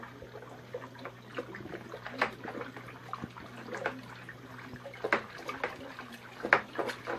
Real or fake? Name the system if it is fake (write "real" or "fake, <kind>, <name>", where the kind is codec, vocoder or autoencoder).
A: real